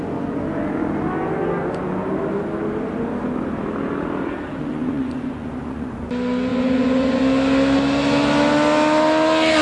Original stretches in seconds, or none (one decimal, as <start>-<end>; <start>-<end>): 0.0-4.6; 6.1-6.5; 7.2-9.6